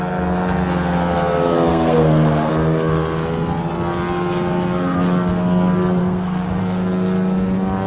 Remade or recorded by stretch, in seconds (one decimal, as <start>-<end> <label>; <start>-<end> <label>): 0.0-1.7 recorded; 1.7-2.5 remade; 2.5-6.0 recorded; 6.0-6.6 remade; 6.6-7.9 recorded